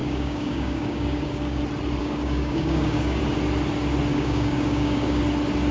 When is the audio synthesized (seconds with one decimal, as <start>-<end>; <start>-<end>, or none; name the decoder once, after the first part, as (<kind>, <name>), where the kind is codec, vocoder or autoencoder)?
0.0-1.6 (codec, DAC); 2.0-3.2; 4.1-5.2